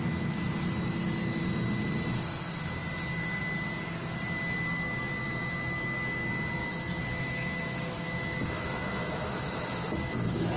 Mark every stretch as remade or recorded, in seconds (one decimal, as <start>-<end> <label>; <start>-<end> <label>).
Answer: 0.0-6.6 recorded; 6.6-10.6 remade